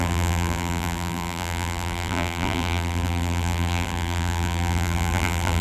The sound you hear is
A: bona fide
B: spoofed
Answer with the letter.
B